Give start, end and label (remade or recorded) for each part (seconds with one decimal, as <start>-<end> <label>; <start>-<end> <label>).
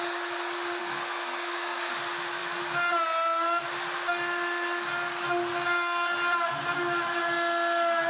0.0-0.8 recorded; 0.8-1.9 remade; 1.9-8.1 recorded